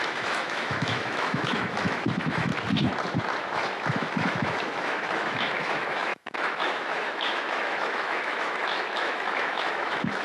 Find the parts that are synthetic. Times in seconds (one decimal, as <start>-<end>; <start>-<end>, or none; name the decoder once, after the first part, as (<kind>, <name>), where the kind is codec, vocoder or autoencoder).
0.0-2.5 (autoencoder, DAC-VAE); 3.4-10.2